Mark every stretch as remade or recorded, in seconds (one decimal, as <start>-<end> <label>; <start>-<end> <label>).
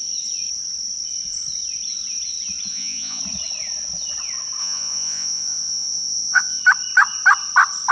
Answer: 0.0-2.7 recorded; 2.7-3.2 remade; 3.2-4.6 recorded; 4.6-6.6 remade; 6.6-7.9 recorded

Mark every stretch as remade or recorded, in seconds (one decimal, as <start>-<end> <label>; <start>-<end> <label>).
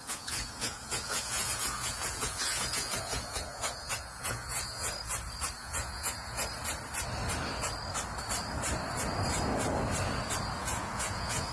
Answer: 0.0-4.9 remade; 4.9-5.6 recorded; 5.6-6.4 remade; 6.4-10.6 recorded; 10.6-11.5 remade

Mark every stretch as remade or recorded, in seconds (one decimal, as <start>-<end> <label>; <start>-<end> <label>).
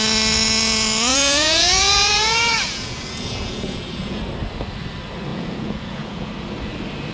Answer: 0.0-1.1 recorded; 1.1-4.2 remade; 4.2-5.3 recorded; 5.3-6.3 remade; 6.3-7.1 recorded